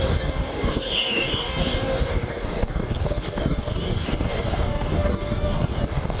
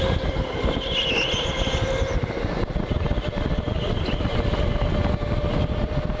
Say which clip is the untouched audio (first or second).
second